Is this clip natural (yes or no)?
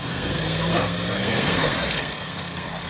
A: no